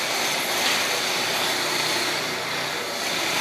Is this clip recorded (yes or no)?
no